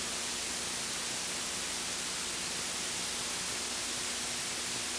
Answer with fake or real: real